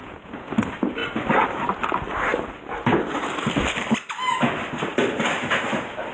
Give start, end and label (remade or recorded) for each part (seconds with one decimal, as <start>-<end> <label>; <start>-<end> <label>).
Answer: 0.0-0.5 remade; 0.5-6.1 recorded